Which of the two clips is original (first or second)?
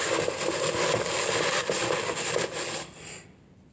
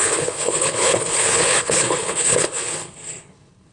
first